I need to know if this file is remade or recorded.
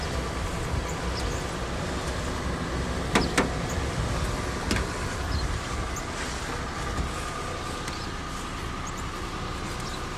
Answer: recorded